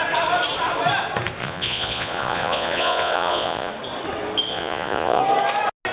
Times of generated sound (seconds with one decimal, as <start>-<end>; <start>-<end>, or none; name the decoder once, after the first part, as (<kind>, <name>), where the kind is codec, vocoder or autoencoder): 1.4-3.7 (vocoder, Vocos); 4.5-5.2